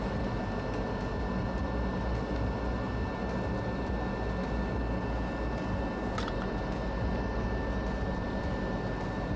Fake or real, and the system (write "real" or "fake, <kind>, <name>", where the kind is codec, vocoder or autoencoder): real